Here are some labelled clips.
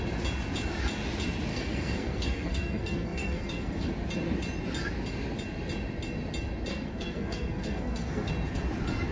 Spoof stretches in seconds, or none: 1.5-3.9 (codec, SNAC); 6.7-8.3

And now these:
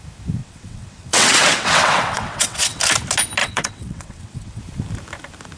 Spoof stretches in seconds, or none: 0.4-2.8 (vocoder, WaveNeXt); 3.4-4.6

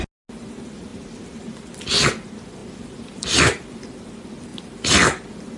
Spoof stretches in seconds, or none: 0.9-1.8 (vocoder, BigVGAN v2); 2.6-3.8

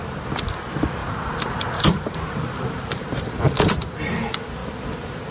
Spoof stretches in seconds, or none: 1.0-3.5 (vocoder, BigVGAN v2)

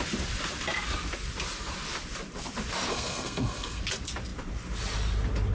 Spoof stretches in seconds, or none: 2.9-3.8 (codec, SNAC)

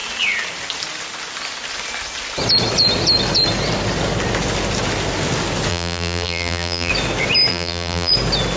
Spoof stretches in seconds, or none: 5.7-6.9 (vocoder, BigVGAN v2); 7.5-8.1

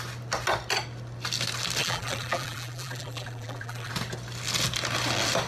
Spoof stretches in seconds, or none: 1.8-3.9 (vocoder, BigVGAN v2)